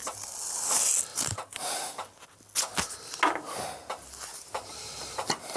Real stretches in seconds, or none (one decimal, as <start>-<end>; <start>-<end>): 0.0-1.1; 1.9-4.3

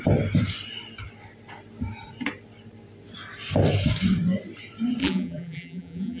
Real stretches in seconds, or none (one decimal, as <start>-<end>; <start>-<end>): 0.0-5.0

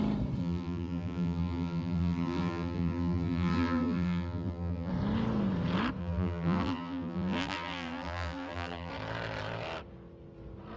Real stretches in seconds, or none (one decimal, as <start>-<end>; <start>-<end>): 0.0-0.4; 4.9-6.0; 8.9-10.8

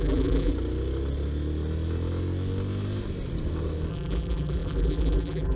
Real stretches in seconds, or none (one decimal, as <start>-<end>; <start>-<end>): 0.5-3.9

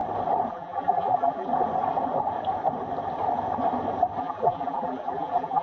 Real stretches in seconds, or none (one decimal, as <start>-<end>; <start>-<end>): 0.0-0.5; 1.5-4.2

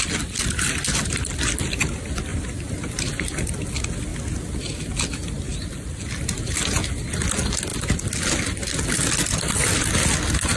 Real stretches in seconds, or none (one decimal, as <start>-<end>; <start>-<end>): 0.0-2.3; 3.5-10.6

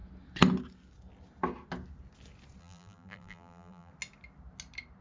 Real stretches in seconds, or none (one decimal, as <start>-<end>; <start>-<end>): 0.0-2.6; 3.9-5.0

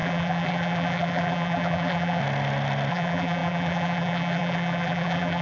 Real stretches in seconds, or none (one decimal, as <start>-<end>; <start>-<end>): 2.2-2.9